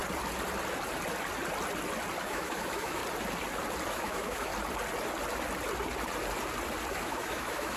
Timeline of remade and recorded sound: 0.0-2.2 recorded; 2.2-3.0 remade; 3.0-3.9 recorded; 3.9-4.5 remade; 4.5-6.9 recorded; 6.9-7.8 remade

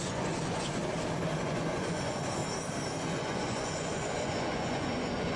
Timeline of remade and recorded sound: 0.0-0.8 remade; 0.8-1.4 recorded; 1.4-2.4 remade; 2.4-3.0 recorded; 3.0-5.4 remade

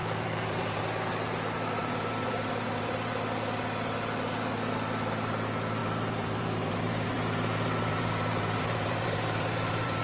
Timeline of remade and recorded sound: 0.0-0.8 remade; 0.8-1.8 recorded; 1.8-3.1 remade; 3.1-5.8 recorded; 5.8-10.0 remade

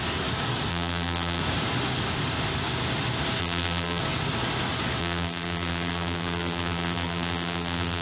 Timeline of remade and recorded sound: 0.0-0.7 recorded; 0.7-1.4 remade; 1.4-3.4 recorded; 3.4-4.0 remade; 4.0-5.0 recorded; 5.0-8.0 remade

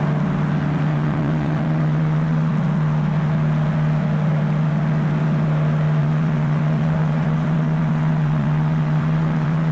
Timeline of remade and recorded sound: 0.0-0.9 recorded; 0.9-2.5 remade; 2.5-6.0 recorded; 6.0-9.7 remade